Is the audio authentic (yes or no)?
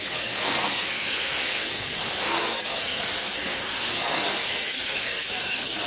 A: no